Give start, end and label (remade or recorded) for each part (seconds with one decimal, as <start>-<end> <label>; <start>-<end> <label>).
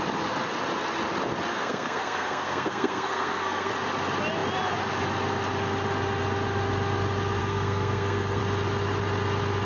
0.0-1.5 recorded; 1.5-3.7 remade; 3.7-7.4 recorded; 7.4-8.4 remade; 8.4-9.7 recorded